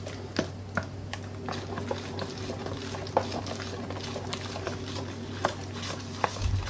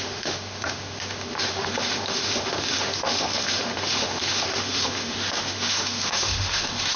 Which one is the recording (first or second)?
first